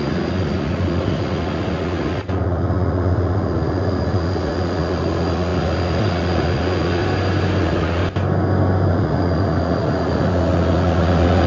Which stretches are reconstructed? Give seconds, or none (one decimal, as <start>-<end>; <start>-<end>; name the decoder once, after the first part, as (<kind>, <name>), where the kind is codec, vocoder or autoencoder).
0.0-7.0 (vocoder, Vocos); 7.6-8.0; 8.9-11.5